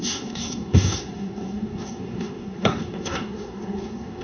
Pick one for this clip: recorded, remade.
remade